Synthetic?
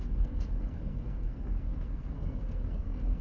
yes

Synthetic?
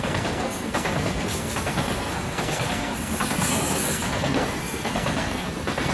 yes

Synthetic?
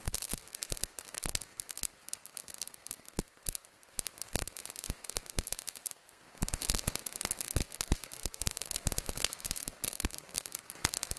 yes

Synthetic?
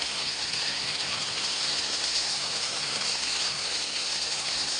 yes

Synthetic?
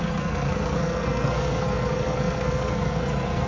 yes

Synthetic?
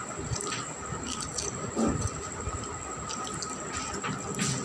no